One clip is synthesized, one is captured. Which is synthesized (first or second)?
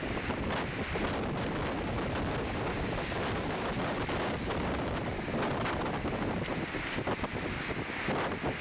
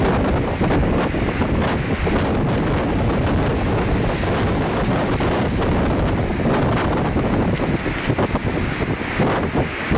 first